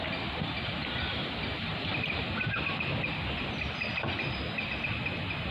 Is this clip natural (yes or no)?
yes